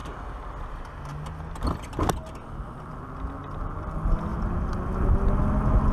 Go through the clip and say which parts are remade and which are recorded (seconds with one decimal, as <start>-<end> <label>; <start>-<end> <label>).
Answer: 0.0-5.9 recorded